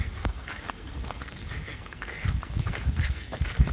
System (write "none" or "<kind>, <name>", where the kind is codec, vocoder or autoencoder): codec, SNAC